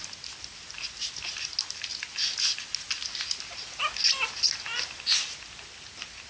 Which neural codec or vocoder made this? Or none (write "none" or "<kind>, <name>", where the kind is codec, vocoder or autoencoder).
none